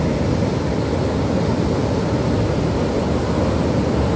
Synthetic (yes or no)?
no